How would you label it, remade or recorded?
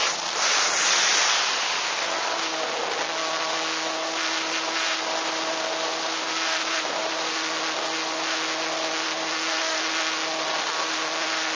recorded